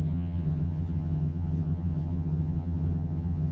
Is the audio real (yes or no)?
no